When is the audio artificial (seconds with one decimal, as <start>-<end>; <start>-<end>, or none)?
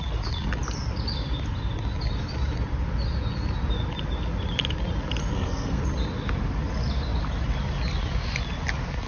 5.2-5.8